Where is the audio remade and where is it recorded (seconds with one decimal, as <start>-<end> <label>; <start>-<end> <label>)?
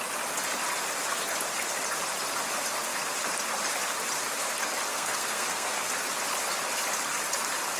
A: 0.0-4.9 recorded; 4.9-5.9 remade; 5.9-7.8 recorded